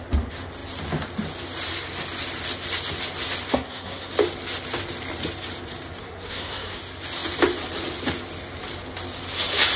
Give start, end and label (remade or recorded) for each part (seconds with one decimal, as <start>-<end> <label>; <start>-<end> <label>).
0.0-3.5 recorded; 3.5-4.1 remade; 4.1-6.0 recorded; 6.0-6.8 remade; 6.8-9.8 recorded